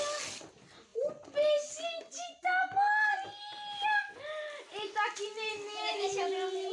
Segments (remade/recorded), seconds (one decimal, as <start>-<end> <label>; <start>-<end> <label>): 0.0-5.5 recorded; 5.5-6.3 remade; 6.3-6.7 recorded